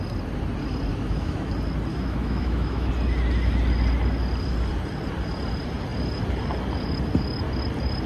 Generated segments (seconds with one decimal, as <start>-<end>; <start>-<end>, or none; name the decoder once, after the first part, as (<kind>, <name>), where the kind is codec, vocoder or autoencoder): 0.9-1.5 (autoencoder, DAC-VAE); 1.9-2.9